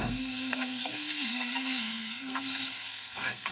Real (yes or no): no